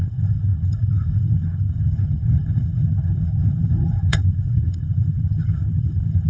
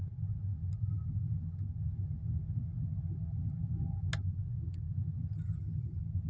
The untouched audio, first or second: second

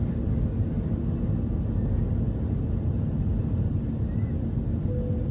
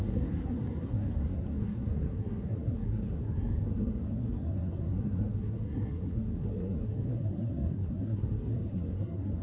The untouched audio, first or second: first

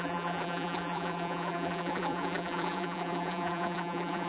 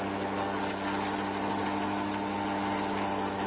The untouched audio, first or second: second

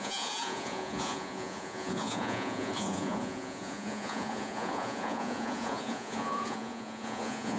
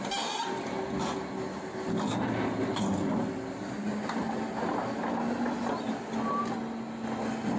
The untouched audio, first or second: second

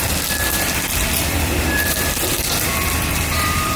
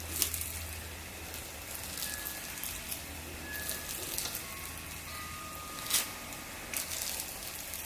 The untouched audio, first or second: second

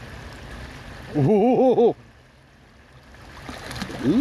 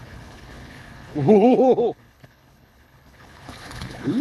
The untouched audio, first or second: first